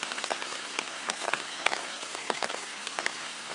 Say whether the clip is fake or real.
fake